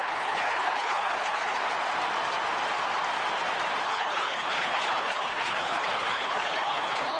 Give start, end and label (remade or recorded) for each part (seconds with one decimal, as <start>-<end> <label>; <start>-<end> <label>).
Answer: 0.0-1.6 remade; 1.6-3.8 recorded; 3.8-7.2 remade